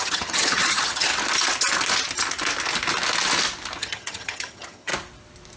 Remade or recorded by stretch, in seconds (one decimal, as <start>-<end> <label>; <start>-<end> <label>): 0.0-1.1 remade; 1.1-3.8 recorded; 3.8-4.9 remade; 4.9-5.6 recorded